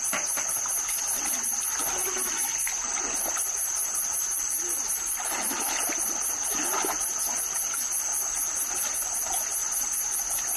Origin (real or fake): real